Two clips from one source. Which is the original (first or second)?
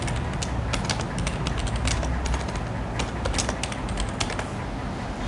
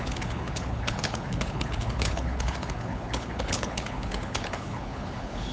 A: first